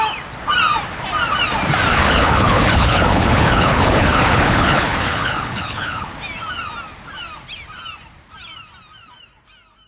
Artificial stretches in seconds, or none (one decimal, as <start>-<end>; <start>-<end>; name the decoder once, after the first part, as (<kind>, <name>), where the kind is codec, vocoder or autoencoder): 1.9-6.1 (codec, HILCodec)